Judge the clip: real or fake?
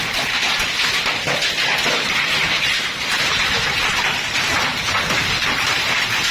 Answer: real